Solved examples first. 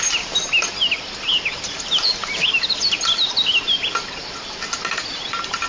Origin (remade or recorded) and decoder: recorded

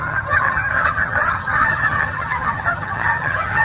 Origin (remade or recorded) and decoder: remade, vocoder, HiFi-GAN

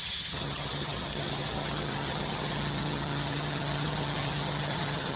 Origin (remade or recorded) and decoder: remade, vocoder, HiFi-GAN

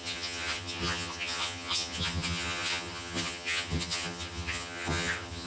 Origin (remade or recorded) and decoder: remade, vocoder, HiFi-GAN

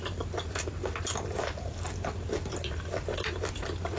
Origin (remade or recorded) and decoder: recorded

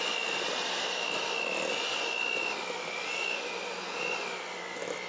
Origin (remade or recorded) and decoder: recorded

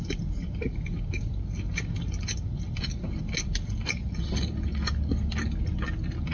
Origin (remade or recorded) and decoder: recorded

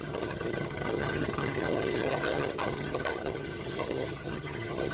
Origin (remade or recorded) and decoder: remade, vocoder, HiFi-GAN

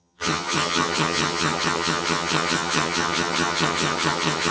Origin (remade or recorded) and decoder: remade, vocoder, HiFi-GAN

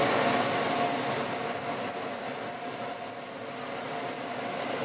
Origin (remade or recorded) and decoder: recorded